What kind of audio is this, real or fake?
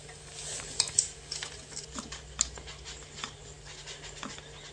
real